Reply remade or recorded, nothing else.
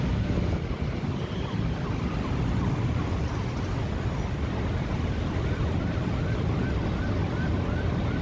recorded